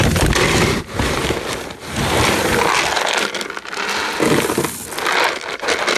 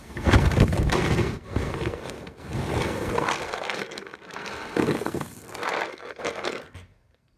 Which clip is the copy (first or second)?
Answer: second